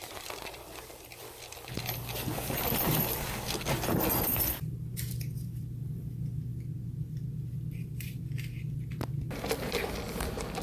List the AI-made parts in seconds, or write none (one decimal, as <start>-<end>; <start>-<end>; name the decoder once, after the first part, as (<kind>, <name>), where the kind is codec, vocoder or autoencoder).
none